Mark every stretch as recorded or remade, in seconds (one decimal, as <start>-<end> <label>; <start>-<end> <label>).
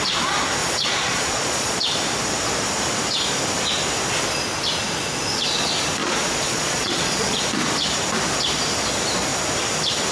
0.0-0.6 recorded; 0.6-1.8 remade; 1.8-6.0 recorded; 6.0-7.4 remade; 7.4-10.1 recorded